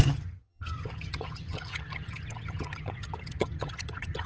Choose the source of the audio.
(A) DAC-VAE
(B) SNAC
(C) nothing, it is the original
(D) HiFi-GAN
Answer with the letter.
D